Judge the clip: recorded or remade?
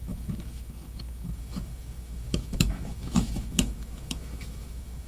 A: remade